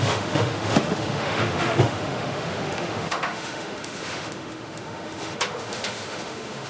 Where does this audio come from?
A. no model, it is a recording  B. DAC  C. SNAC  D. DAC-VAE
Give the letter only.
D